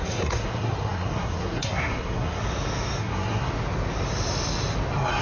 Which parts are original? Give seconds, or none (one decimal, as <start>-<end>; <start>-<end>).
2.4-3.0; 3.5-5.2